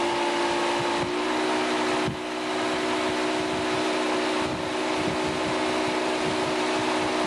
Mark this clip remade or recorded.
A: recorded